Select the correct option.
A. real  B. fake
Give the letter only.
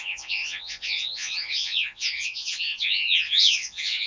B